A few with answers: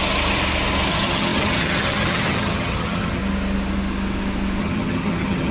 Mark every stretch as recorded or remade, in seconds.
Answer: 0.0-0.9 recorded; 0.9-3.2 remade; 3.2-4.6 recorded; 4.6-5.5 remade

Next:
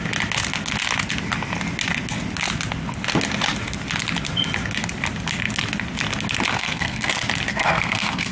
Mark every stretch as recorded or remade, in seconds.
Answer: 0.0-6.5 recorded; 6.5-7.1 remade; 7.1-7.5 recorded; 7.5-8.3 remade